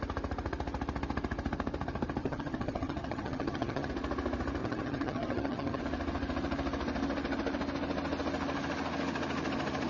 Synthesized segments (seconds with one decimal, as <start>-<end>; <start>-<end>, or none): 2.2-3.9; 4.6-5.8